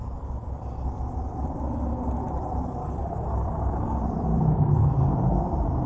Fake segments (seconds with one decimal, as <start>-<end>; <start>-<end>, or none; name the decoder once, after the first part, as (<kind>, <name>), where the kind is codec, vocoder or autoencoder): 0.0-5.9 (vocoder, BigVGAN v2)